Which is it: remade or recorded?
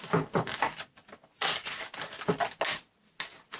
recorded